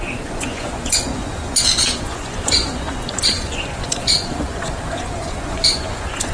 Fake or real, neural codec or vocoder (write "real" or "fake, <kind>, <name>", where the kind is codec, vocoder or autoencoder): fake, vocoder, Vocos